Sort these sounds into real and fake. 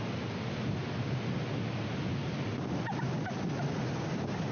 real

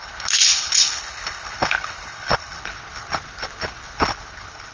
fake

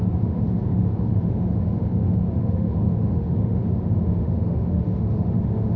fake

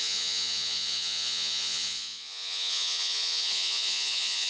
fake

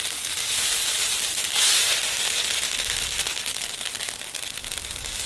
real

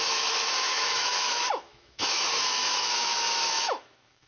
fake